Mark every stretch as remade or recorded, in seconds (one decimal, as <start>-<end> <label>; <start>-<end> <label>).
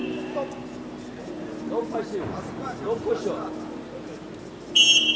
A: 0.0-5.2 recorded